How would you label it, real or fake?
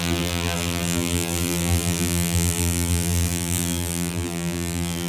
fake